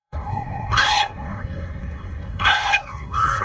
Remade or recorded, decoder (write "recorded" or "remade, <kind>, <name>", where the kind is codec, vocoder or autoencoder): remade, codec, SNAC